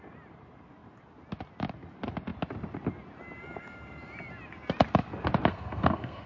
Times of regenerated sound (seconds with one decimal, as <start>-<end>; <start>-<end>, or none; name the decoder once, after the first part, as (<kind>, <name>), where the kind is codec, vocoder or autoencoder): 5.5-6.3 (codec, SNAC)